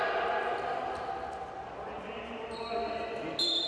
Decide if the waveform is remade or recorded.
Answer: recorded